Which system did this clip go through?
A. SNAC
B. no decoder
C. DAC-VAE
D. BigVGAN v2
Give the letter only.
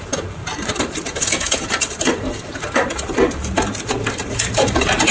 D